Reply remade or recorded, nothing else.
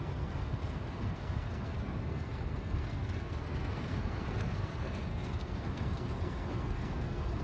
remade